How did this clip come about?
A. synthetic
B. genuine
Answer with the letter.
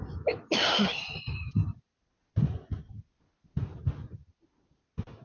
B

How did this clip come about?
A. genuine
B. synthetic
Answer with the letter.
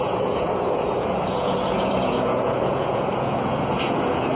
B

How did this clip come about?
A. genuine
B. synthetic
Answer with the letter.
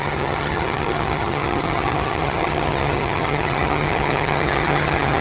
B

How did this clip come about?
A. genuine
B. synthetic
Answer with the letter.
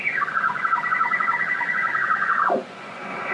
B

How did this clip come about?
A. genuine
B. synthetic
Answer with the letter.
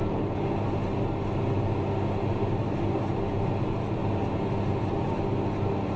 A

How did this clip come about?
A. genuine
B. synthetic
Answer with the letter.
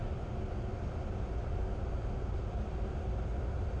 A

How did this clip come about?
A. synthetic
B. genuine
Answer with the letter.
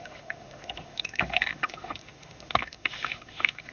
A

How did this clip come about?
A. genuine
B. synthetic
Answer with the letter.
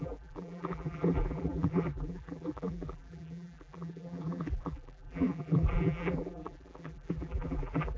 B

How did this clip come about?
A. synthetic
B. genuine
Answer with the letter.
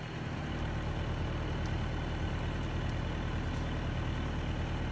B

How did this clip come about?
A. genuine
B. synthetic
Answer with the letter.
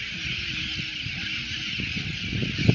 A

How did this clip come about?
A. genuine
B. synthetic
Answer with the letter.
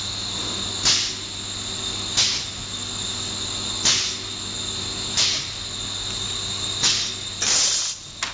A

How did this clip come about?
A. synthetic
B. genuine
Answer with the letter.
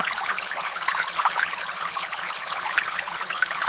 A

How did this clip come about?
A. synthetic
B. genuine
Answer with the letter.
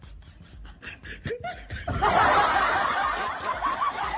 B